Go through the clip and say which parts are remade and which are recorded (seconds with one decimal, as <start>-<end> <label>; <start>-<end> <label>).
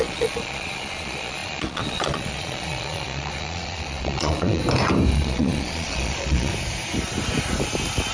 0.0-4.6 remade; 4.6-5.1 recorded; 5.1-6.5 remade; 6.5-8.1 recorded